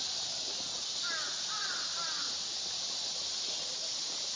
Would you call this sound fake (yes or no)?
no